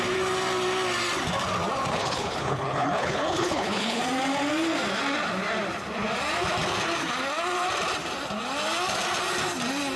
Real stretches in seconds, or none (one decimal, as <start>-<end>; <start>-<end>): 0.0-1.9; 4.0-10.0